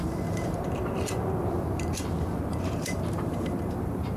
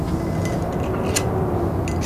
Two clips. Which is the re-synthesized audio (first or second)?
first